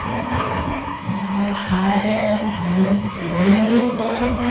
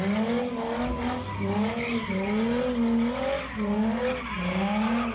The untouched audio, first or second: second